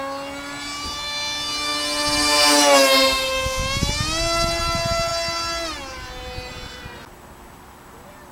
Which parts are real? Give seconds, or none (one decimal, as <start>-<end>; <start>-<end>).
0.0-8.3